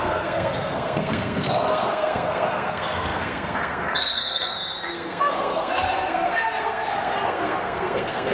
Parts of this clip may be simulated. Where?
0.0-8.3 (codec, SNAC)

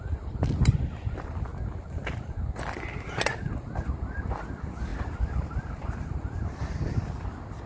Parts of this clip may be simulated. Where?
0.0-1.5 (vocoder, BigVGAN v2); 4.2-7.7

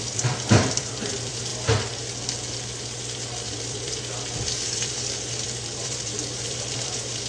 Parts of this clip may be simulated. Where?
0.0-1.5 (vocoder, BigVGAN v2); 3.5-7.3